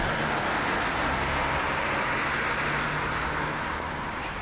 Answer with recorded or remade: recorded